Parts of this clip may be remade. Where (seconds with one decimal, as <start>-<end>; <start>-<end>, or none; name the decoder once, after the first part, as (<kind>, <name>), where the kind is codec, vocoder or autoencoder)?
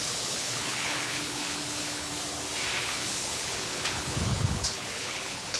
0.0-2.1 (codec, HILCodec); 2.8-5.6